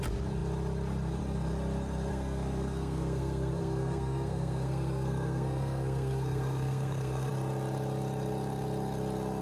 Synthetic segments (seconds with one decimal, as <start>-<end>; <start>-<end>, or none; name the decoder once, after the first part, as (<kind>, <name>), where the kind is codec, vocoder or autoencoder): 2.1-7.3 (codec, SNAC)